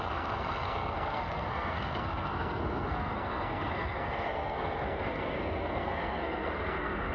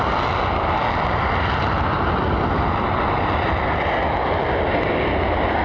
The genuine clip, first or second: second